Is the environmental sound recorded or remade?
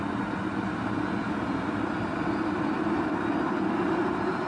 recorded